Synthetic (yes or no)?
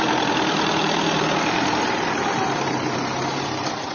yes